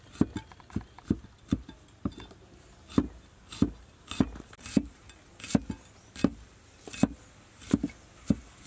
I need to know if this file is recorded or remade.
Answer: recorded